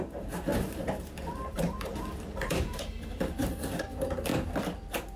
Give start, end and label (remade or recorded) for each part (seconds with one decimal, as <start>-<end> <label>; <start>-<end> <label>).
0.0-4.3 remade; 4.3-5.2 recorded